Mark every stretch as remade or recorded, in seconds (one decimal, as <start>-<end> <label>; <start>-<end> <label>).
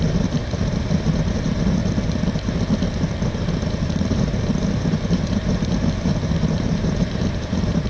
0.0-1.8 remade; 1.8-3.3 recorded; 3.3-7.9 remade